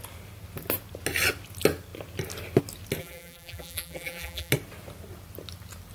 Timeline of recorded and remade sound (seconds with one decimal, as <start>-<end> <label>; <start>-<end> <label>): 0.0-3.0 recorded; 3.0-4.5 remade; 4.5-5.9 recorded